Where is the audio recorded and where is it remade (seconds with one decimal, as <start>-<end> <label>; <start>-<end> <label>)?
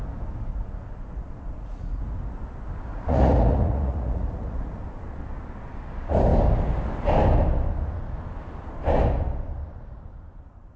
0.0-0.5 recorded; 0.5-2.0 remade; 2.0-2.9 recorded; 2.9-4.7 remade; 4.7-10.8 recorded